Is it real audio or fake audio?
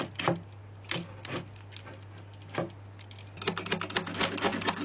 real